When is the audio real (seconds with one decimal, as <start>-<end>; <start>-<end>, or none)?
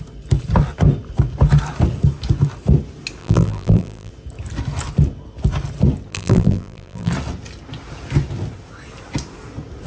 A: 0.0-3.2; 4.1-6.1; 7.1-9.9